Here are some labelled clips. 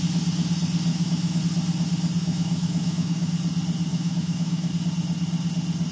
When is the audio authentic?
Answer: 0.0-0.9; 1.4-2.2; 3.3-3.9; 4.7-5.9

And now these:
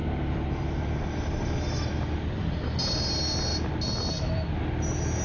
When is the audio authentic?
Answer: 0.0-5.2

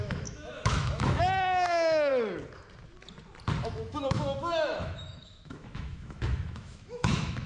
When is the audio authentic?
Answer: 2.1-3.6

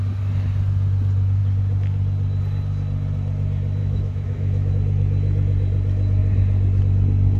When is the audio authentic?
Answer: 0.0-3.8; 4.7-7.4